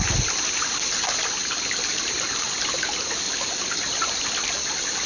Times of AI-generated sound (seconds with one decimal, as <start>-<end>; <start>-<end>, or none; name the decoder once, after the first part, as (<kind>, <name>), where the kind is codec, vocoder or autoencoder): none